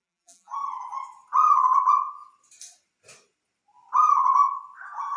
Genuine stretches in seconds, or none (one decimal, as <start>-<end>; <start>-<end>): 0.6-5.2